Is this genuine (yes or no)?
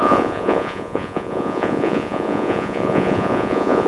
no